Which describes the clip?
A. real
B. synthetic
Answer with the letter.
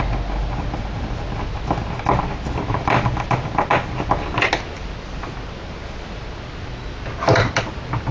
A